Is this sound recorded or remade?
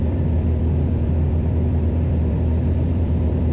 remade